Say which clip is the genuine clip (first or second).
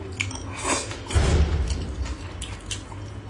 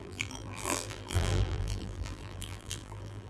first